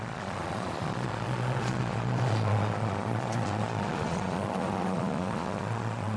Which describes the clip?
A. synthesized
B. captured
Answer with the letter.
A